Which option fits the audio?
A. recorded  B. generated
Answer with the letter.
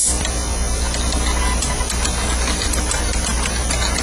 A